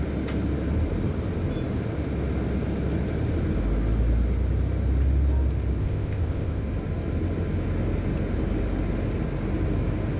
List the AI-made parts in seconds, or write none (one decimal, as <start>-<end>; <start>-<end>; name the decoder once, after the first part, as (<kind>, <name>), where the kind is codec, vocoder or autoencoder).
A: 5.8-6.6 (codec, ZipCodec)